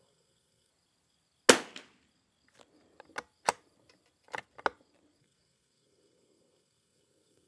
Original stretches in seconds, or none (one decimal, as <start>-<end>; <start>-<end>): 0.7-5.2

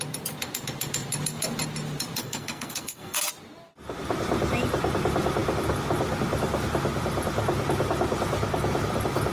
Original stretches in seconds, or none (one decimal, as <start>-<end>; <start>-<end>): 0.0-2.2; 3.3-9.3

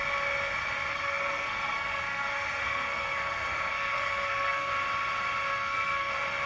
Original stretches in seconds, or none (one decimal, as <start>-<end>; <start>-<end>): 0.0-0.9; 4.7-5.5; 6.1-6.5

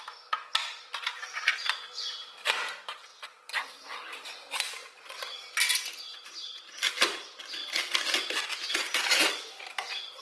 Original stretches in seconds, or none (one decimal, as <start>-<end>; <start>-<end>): 0.0-10.2

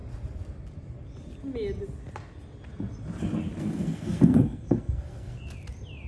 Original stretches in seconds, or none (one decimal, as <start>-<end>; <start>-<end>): 0.0-3.6; 5.4-6.1

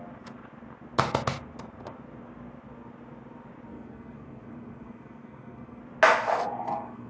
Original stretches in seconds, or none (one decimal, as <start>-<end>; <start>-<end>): 0.0-3.7; 5.8-6.3

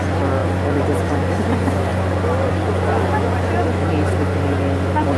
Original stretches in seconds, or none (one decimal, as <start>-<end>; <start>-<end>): 0.0-5.2